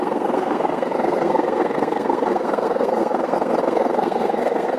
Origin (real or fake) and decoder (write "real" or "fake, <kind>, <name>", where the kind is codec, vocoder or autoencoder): fake, codec, SNAC